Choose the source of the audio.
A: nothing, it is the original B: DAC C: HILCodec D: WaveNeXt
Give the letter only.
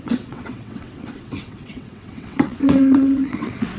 D